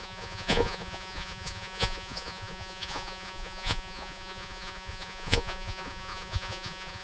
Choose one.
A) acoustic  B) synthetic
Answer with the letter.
B